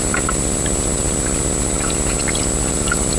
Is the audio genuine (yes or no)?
yes